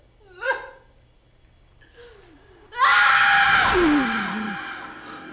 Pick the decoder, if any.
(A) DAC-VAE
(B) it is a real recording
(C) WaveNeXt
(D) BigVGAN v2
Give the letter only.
B